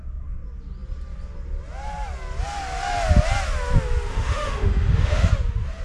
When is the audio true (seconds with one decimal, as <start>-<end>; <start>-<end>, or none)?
0.0-4.1; 5.3-5.8